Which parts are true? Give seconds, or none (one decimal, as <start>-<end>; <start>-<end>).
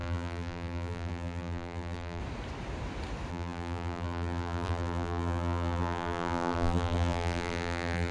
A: 2.2-3.3